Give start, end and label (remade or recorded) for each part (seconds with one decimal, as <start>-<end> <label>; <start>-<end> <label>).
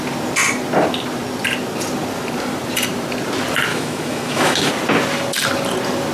0.0-3.7 recorded; 3.7-4.7 remade; 4.7-6.1 recorded